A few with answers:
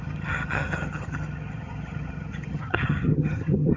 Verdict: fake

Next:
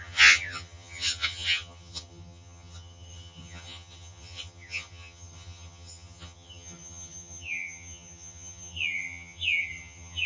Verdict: fake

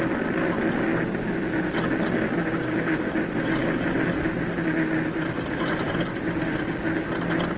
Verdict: real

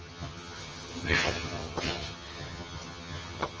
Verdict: fake